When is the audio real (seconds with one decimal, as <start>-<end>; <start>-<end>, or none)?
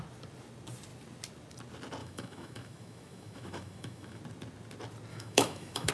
0.0-2.0; 4.2-5.1